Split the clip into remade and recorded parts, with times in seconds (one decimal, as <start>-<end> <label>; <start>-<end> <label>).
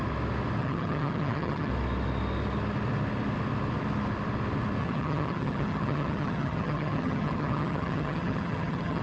0.0-0.6 recorded; 0.6-1.7 remade; 1.7-4.8 recorded; 4.8-9.0 remade